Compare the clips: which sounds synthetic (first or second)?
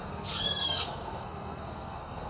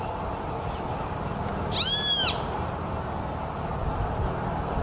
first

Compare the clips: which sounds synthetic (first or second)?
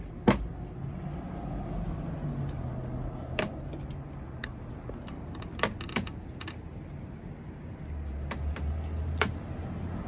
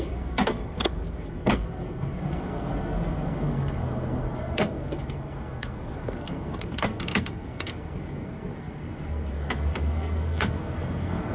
second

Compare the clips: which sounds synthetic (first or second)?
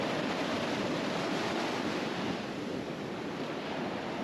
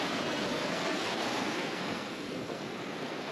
second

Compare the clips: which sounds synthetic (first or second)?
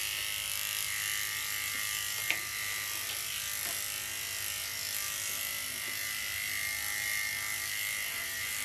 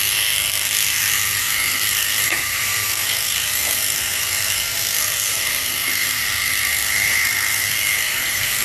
second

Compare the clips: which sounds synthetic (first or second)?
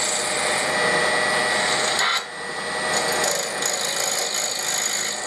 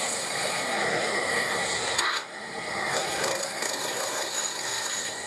second